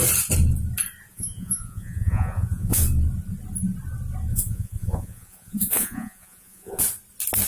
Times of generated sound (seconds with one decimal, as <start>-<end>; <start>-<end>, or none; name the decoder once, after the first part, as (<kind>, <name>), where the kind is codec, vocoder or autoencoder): 1.1-2.8 (vocoder, Vocos); 4.3-6.8